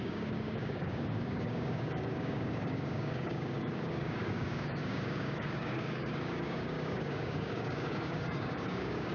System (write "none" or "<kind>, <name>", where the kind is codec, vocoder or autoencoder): codec, DAC